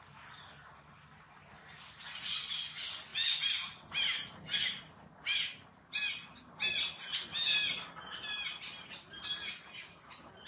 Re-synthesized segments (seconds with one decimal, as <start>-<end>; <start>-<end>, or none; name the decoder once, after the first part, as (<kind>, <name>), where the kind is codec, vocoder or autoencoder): none